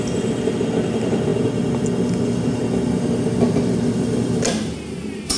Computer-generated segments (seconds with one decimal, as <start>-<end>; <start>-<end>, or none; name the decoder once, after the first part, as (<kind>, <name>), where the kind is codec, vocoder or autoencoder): none